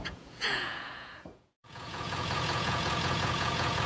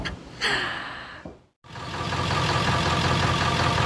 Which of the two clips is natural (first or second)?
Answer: second